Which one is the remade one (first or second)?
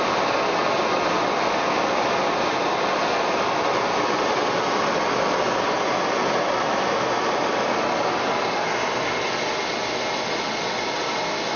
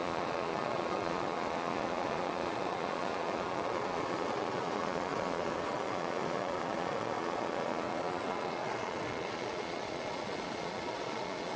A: second